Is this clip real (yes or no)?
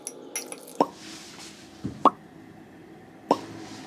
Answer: yes